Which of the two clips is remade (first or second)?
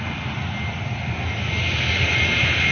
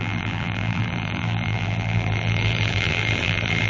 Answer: second